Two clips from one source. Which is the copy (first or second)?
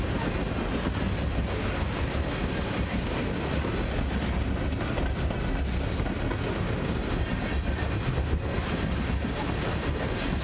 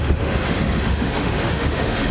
second